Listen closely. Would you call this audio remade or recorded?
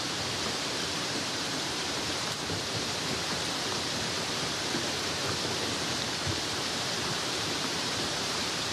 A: remade